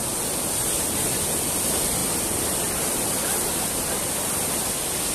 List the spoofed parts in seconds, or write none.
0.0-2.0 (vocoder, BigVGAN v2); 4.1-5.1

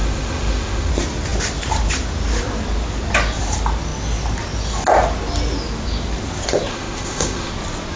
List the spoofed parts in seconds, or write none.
0.0-0.9 (autoencoder, DAC-VAE); 6.7-7.5